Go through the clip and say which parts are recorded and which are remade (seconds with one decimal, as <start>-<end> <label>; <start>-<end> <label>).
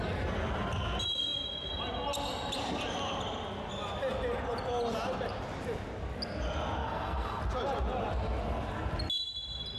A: 0.0-6.8 recorded; 6.8-7.4 remade; 7.4-9.8 recorded